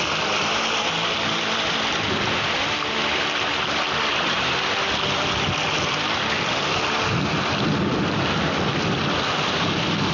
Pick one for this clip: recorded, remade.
recorded